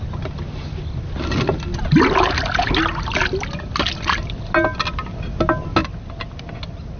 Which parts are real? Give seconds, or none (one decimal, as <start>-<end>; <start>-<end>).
0.0-7.0